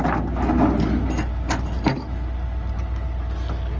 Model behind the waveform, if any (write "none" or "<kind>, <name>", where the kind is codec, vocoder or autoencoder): none